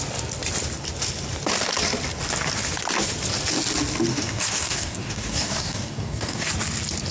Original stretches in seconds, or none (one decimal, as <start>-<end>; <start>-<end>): 0.0-4.1; 6.5-7.1